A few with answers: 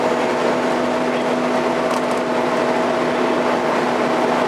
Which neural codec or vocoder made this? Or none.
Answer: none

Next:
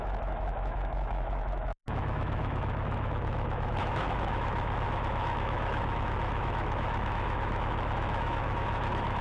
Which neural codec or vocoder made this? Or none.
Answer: autoencoder, DAC-VAE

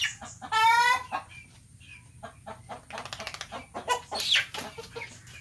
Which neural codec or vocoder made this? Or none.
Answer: none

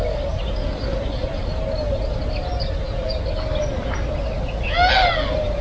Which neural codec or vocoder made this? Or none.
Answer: none